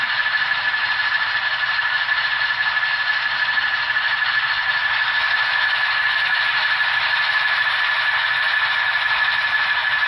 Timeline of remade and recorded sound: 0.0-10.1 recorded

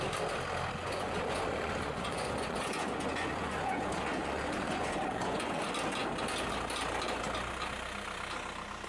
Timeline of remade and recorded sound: 0.0-0.8 recorded; 0.8-5.6 remade; 5.6-8.9 recorded

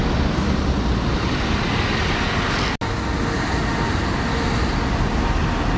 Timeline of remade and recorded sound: 0.0-5.8 recorded

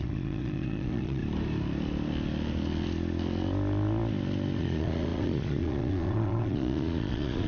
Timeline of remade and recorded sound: 0.0-1.2 remade; 1.2-4.6 recorded; 4.6-7.5 remade